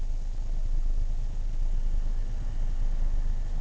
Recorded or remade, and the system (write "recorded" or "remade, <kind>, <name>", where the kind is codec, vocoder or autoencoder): recorded